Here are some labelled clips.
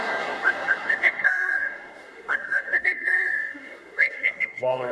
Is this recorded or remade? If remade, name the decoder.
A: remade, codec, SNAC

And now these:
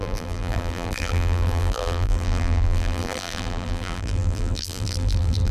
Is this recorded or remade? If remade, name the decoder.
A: remade, vocoder, BigVGAN v2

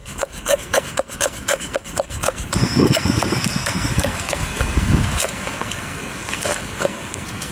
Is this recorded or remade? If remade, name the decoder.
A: remade, codec, SNAC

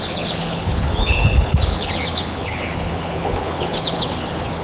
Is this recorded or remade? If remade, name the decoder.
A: remade, codec, HILCodec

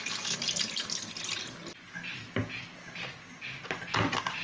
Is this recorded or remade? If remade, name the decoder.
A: recorded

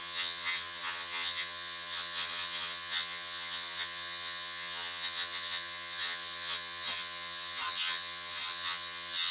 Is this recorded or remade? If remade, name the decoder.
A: remade, vocoder, HiFi-GAN